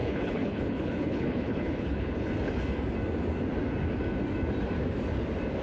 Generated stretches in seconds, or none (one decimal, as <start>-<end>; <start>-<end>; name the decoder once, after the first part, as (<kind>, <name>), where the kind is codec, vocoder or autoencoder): 0.0-2.3 (codec, HILCodec)